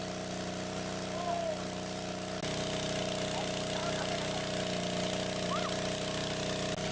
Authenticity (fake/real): real